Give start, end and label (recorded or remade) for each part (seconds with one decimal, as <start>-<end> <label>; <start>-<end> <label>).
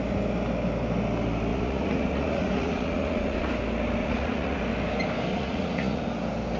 0.0-1.5 recorded; 1.5-3.5 remade; 3.5-4.0 recorded; 4.0-4.6 remade; 4.6-5.3 recorded; 5.3-6.0 remade; 6.0-6.6 recorded